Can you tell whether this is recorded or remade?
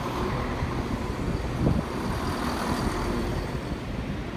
recorded